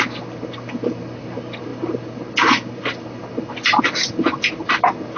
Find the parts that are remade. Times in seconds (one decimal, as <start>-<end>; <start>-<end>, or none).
none